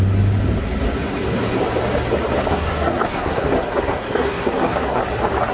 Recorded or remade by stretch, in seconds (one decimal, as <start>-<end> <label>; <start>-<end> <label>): 0.0-2.5 recorded; 2.5-5.0 remade; 5.0-5.5 recorded